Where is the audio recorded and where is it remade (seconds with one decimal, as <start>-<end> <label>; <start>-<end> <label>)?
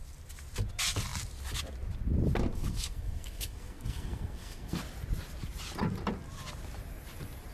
0.0-2.5 recorded; 2.5-4.8 remade; 4.8-7.5 recorded